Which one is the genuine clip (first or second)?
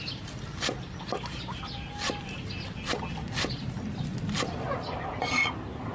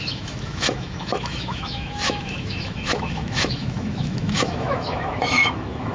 first